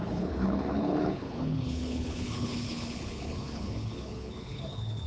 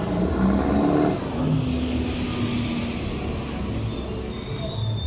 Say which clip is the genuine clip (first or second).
second